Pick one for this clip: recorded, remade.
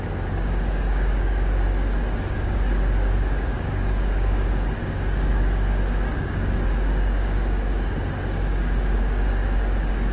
remade